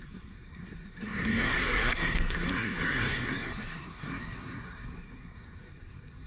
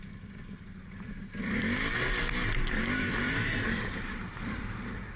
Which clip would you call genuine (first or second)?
second